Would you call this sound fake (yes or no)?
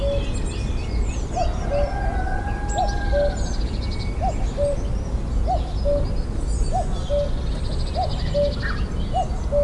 no